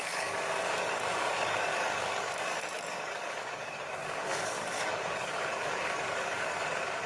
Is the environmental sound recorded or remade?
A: remade